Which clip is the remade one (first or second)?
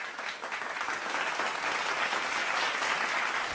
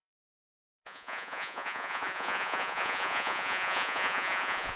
second